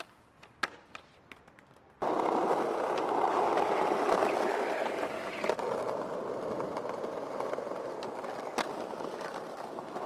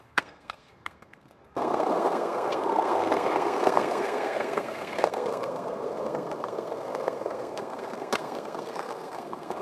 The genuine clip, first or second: first